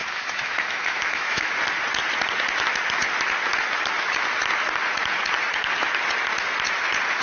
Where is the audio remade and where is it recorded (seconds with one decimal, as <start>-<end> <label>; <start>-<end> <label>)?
0.0-1.5 remade; 1.5-7.2 recorded

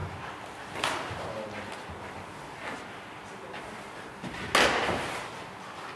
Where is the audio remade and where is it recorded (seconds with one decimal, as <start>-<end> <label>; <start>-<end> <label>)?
0.0-6.0 recorded

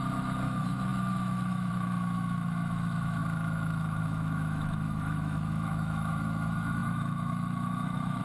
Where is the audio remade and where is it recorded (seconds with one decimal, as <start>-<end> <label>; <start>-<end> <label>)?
0.0-8.2 remade

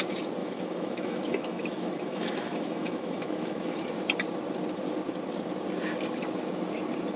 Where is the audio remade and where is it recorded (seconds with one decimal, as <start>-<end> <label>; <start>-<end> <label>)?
0.0-0.4 recorded; 0.4-3.8 remade; 3.8-7.2 recorded

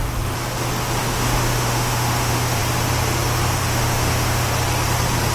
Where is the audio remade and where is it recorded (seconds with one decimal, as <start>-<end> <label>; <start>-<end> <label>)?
0.0-1.0 recorded; 1.0-2.6 remade; 2.6-3.6 recorded; 3.6-4.5 remade; 4.5-5.3 recorded

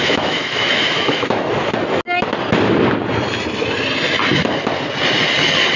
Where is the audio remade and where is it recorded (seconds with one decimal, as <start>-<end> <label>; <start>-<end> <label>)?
0.0-1.5 remade; 1.5-5.8 recorded

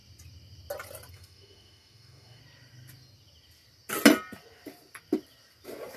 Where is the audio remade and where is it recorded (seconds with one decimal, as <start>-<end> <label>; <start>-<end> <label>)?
0.0-1.1 recorded; 1.1-2.4 remade; 2.4-6.0 recorded

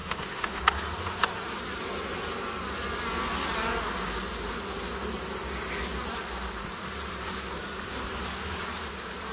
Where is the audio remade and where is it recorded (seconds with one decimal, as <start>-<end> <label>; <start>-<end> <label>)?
0.0-0.6 remade; 0.6-9.3 recorded